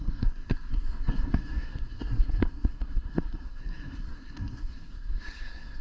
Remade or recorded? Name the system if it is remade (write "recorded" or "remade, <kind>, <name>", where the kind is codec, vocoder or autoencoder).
remade, codec, SNAC